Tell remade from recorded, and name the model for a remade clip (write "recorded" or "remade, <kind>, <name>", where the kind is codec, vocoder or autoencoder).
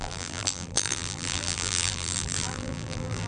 remade, vocoder, BigVGAN v2